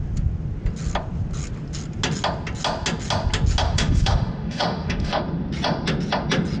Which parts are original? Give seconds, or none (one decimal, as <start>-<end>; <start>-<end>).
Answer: 0.0-3.6; 5.2-6.6